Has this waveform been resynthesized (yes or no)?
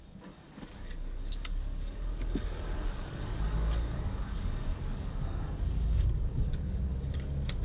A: yes